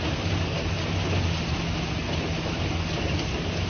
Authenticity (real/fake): real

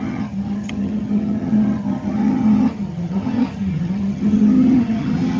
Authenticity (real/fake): fake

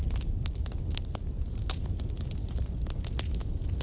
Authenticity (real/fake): real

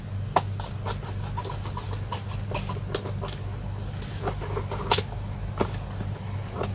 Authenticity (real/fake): real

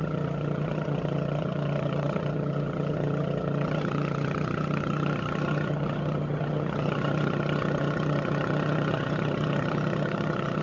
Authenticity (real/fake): fake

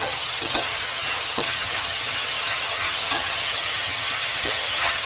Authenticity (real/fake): fake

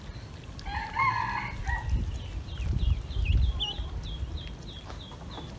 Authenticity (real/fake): real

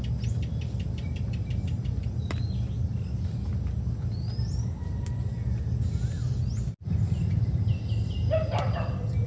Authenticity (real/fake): real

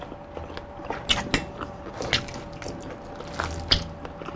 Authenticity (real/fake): real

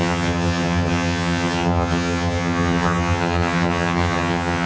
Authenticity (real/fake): fake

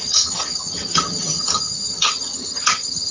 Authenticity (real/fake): fake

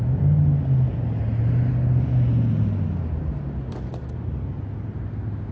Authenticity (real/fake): real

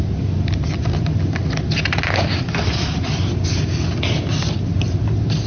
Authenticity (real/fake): real